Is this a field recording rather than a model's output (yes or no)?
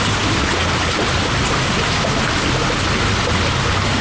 yes